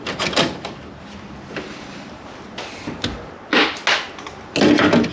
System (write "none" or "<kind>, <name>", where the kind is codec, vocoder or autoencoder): none